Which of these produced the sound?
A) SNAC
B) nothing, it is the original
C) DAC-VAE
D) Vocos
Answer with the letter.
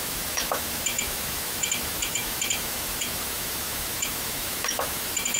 C